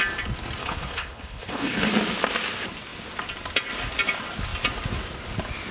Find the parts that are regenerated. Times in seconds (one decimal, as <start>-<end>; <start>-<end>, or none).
0.6-1.9